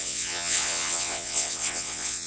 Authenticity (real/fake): fake